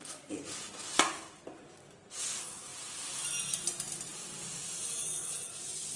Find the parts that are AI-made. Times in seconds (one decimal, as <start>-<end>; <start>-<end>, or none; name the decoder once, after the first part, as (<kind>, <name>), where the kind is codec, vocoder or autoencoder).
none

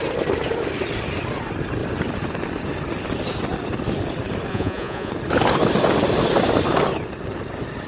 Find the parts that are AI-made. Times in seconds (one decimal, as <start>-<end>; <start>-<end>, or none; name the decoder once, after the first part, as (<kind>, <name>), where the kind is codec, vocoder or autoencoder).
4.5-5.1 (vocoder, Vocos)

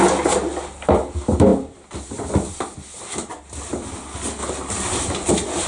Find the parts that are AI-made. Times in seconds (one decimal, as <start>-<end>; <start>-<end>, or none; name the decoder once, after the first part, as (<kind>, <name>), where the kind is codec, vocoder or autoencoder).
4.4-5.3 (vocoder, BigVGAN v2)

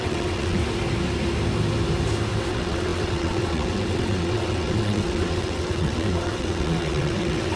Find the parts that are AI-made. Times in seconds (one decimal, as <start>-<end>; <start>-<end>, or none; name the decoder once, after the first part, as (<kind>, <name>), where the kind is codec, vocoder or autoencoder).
0.0-0.6 (vocoder, WaveNeXt); 2.5-7.6

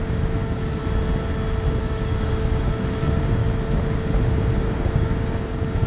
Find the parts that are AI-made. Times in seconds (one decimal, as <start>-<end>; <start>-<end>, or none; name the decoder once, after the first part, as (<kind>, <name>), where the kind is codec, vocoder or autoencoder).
0.0-0.8 (codec, DAC); 1.8-3.4; 4.3-5.9

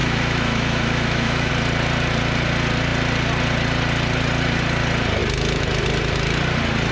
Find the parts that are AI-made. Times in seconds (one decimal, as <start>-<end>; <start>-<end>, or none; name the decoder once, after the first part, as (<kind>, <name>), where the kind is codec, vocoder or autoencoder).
0.0-1.5 (autoencoder, DAC-VAE)

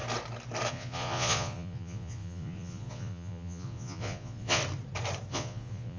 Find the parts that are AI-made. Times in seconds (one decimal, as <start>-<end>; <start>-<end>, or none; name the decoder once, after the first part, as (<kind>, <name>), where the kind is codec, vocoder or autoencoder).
0.7-4.6 (vocoder, Vocos); 5.3-6.0

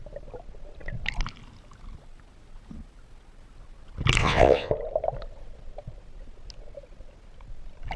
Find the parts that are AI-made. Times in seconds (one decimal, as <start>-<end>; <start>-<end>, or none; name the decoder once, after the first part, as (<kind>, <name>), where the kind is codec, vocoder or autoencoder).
4.2-4.7 (vocoder, WaveNeXt)